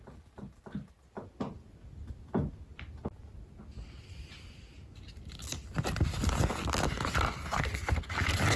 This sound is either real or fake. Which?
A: real